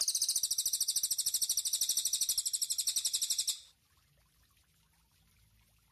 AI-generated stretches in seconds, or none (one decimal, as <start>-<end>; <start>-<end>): none